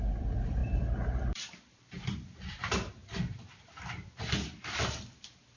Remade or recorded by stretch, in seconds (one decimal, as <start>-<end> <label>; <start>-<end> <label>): 0.0-5.6 recorded